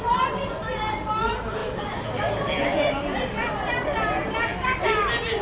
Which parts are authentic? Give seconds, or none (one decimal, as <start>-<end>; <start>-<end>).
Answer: 0.0-5.4